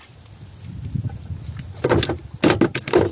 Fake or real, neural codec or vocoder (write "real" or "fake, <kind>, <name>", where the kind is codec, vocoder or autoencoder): real